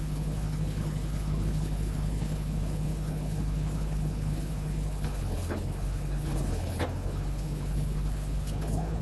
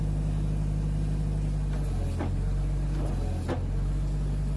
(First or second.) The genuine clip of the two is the second